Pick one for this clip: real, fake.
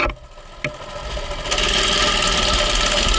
real